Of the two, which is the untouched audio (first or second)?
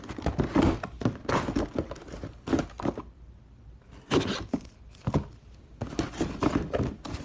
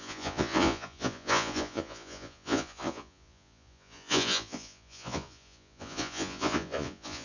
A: first